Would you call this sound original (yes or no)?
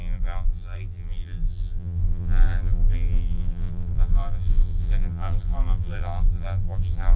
no